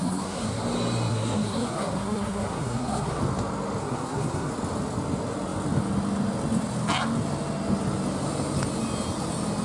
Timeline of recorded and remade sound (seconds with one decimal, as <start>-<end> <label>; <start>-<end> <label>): 0.0-0.6 remade; 0.6-1.1 recorded; 1.1-3.2 remade; 3.2-3.8 recorded; 3.8-4.5 remade; 4.5-9.6 recorded